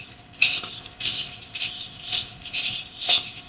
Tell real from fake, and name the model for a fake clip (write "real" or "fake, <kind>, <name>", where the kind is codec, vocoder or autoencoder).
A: fake, codec, ZipCodec